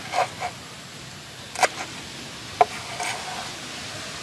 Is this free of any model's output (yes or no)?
yes